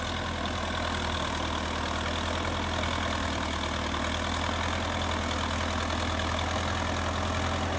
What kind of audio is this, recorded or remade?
recorded